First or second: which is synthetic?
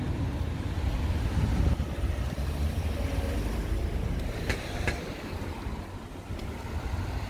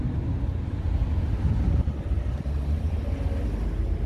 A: first